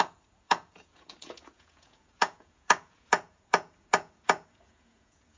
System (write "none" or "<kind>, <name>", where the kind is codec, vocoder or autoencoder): vocoder, Vocos